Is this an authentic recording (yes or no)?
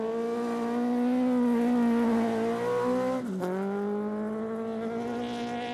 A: yes